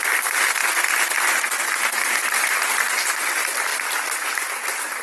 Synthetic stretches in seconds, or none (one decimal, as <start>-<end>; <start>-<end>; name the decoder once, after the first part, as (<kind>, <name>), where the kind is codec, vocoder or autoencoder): 0.0-0.6 (vocoder, BigVGAN v2); 2.7-5.0